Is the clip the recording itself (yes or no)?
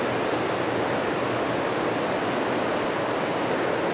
yes